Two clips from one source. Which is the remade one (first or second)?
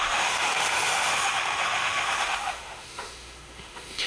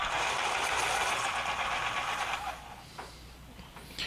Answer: first